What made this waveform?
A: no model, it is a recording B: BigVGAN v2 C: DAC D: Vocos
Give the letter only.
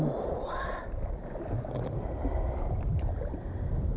A